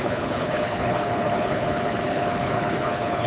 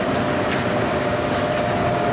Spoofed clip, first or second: first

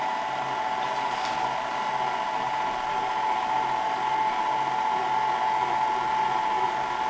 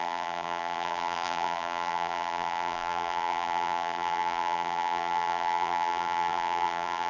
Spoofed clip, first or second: second